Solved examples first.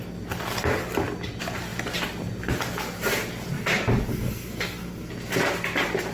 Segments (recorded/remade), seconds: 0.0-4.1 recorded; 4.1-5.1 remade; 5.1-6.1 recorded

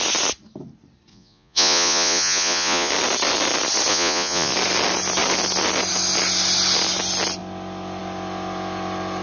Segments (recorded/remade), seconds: 0.0-1.1 recorded; 1.1-2.9 remade; 2.9-3.9 recorded; 3.9-4.5 remade; 4.5-9.2 recorded